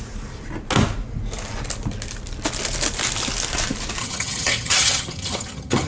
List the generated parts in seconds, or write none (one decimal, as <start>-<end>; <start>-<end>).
4.0-5.9